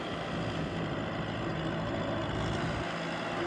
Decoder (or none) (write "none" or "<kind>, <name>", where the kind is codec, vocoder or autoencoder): none